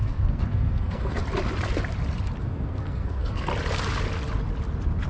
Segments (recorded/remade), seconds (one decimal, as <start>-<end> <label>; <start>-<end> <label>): 0.0-1.2 remade; 1.2-2.4 recorded; 2.4-3.5 remade; 3.5-5.1 recorded

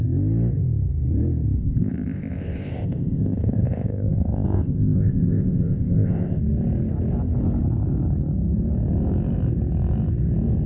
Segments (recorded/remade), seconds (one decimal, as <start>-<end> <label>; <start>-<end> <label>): 0.0-1.6 recorded; 1.6-6.4 remade; 6.4-10.7 recorded

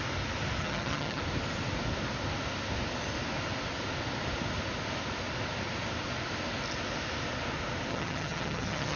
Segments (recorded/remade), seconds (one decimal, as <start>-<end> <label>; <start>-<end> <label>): 0.0-0.6 recorded; 0.6-1.2 remade; 1.2-7.9 recorded; 7.9-9.0 remade

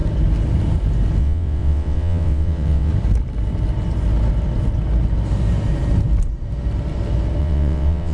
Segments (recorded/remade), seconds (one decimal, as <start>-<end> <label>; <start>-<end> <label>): 0.0-1.2 recorded; 1.2-2.9 remade; 2.9-7.4 recorded; 7.4-8.1 remade

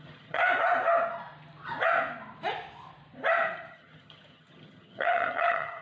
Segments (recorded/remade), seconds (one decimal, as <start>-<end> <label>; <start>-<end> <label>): 0.0-0.4 remade; 0.4-3.7 recorded; 3.7-5.8 remade

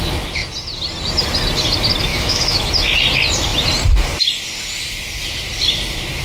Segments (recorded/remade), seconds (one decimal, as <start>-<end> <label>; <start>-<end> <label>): 0.0-2.1 recorded; 2.1-2.7 remade; 2.7-6.2 recorded

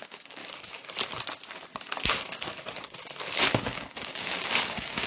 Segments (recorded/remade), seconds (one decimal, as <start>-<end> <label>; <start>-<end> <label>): 0.0-0.4 remade; 0.4-3.5 recorded; 3.5-5.1 remade

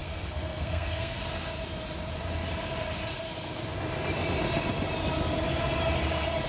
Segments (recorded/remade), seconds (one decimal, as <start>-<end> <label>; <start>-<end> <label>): 0.0-1.2 remade; 1.2-6.5 recorded